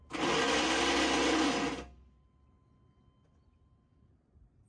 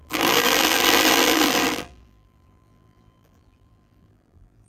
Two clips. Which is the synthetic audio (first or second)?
second